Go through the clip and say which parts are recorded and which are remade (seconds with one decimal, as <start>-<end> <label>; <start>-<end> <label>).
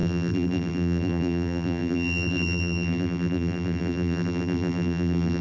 0.0-5.4 remade